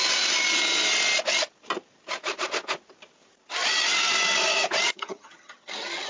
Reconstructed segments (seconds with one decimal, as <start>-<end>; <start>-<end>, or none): 4.9-6.1